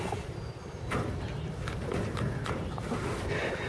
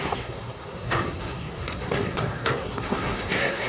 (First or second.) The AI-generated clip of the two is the second